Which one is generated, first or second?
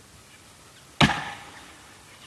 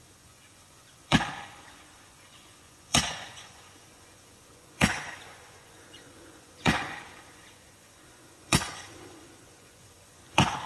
second